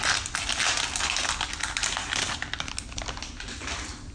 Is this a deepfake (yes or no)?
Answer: no